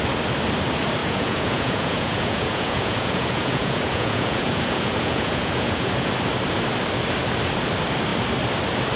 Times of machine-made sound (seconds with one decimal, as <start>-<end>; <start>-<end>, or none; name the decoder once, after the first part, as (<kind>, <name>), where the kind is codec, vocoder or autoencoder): 1.0-6.1 (vocoder, Vocos)